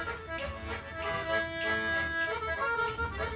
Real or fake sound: real